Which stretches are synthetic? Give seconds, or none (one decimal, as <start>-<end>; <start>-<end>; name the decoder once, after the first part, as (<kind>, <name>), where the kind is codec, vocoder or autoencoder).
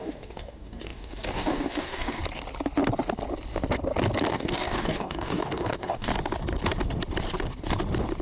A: 0.0-2.2 (codec, DAC); 4.3-6.1